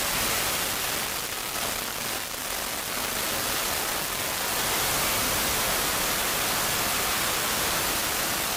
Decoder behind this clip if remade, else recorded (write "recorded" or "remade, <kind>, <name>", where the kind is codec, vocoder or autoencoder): recorded